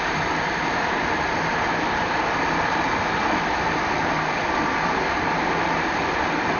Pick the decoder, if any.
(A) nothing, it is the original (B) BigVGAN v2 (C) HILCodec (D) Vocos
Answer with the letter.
B